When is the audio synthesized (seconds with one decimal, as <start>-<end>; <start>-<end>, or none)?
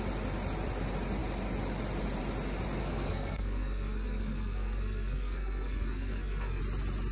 2.8-6.6